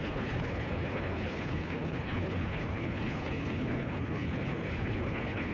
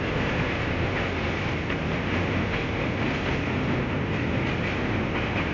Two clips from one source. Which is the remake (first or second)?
first